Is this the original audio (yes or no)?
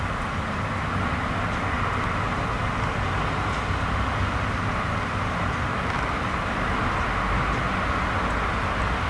yes